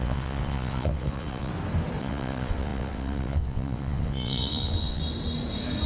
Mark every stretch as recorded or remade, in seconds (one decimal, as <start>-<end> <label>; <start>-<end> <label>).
0.0-1.5 remade; 1.5-2.0 recorded; 2.0-5.0 remade; 5.0-5.9 recorded